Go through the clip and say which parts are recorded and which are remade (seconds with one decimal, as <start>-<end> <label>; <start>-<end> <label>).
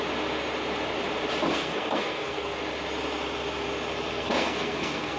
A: 0.0-1.5 recorded; 1.5-2.6 remade; 2.6-4.1 recorded; 4.1-5.2 remade